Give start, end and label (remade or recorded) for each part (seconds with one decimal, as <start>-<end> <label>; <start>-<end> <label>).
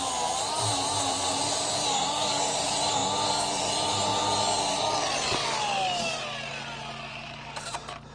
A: 0.0-3.0 remade; 3.0-3.6 recorded; 3.6-4.1 remade; 4.1-7.1 recorded; 7.1-8.1 remade